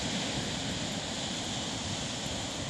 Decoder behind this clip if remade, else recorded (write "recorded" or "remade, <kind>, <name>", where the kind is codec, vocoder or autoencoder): recorded